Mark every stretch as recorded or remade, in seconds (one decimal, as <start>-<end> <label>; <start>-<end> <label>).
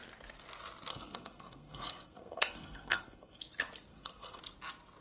0.0-0.9 recorded; 0.9-3.4 remade; 3.4-3.9 recorded; 3.9-4.4 remade; 4.4-5.0 recorded